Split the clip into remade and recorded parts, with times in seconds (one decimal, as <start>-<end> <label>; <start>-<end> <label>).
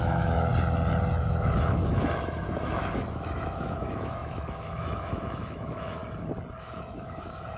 0.0-0.5 remade; 0.5-1.3 recorded; 1.3-6.0 remade; 6.0-6.6 recorded; 6.6-7.6 remade